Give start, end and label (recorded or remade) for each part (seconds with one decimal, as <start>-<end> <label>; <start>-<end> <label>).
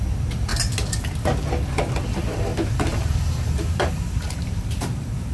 0.0-0.5 remade; 0.5-1.4 recorded; 1.4-5.3 remade